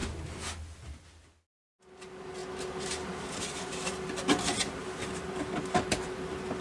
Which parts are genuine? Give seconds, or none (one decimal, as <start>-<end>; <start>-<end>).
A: 0.0-6.6